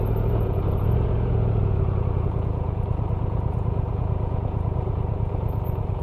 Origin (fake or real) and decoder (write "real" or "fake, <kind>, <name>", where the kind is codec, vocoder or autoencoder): fake, vocoder, Vocos